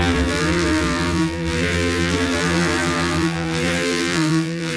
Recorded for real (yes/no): no